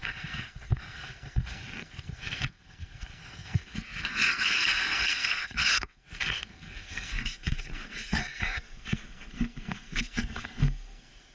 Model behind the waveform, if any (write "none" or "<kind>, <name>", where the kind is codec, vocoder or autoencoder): codec, SNAC